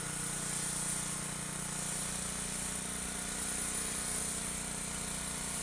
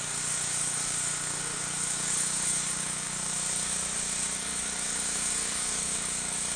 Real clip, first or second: first